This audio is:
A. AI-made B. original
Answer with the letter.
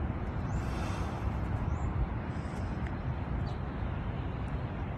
A